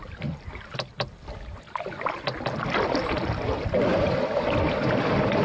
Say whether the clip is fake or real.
real